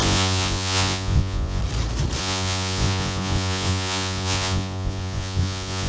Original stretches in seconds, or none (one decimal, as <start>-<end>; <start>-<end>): 1.6-2.2